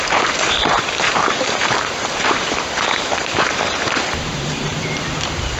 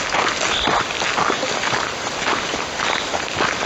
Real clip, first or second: second